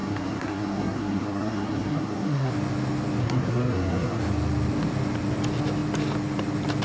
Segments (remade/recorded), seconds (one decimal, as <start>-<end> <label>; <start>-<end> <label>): 0.0-2.5 remade; 2.5-3.2 recorded; 3.2-4.2 remade; 4.2-6.8 recorded